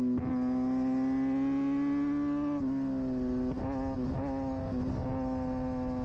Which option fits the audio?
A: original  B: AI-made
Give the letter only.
A